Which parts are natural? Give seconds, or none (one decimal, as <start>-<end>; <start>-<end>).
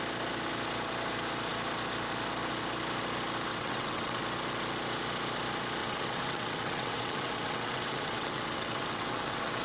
0.0-3.5; 4.2-5.8